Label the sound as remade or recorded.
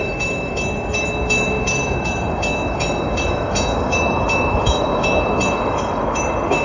remade